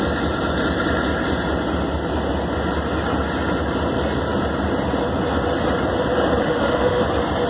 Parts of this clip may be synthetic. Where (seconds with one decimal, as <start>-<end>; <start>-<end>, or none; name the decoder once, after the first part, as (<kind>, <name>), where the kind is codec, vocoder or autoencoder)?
6.4-7.0 (autoencoder, DAC-VAE)